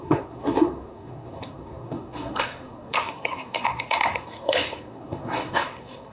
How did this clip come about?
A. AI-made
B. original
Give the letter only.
A